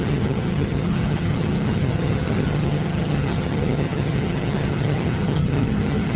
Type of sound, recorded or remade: remade